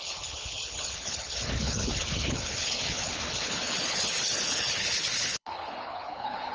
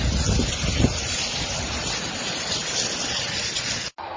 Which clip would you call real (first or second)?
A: second